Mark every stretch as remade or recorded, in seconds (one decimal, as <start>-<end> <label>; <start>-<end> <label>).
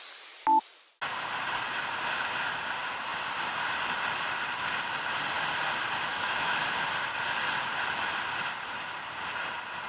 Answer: 0.0-6.1 recorded; 6.1-6.6 remade; 6.6-9.9 recorded